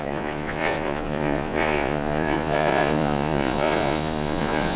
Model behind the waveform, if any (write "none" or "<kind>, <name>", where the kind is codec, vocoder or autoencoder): vocoder, Vocos